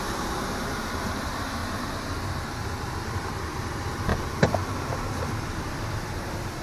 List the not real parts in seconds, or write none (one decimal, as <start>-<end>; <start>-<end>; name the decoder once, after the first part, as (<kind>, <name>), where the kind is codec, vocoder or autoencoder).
0.0-1.6 (vocoder, BigVGAN v2); 2.4-4.1; 5.2-6.6